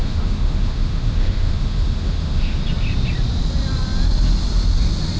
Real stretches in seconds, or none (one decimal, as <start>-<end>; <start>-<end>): 2.6-5.2